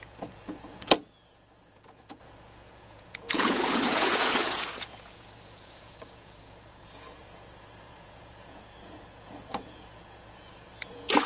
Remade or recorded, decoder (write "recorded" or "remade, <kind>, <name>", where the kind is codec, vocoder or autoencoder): remade, vocoder, Vocos